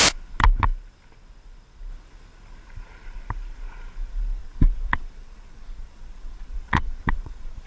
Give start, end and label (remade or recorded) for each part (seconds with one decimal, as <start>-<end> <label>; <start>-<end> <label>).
0.0-4.4 recorded; 4.4-7.7 remade